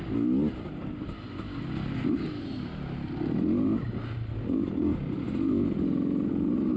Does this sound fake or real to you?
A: real